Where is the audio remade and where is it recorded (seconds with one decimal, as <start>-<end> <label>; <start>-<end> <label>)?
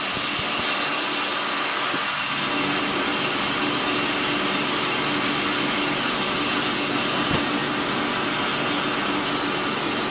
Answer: 0.0-1.3 recorded; 1.3-5.7 remade; 5.7-7.6 recorded; 7.6-8.3 remade; 8.3-10.1 recorded